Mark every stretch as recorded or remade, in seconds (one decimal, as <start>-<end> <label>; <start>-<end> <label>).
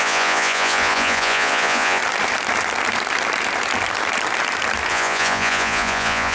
0.0-2.0 remade; 2.0-4.9 recorded; 4.9-6.3 remade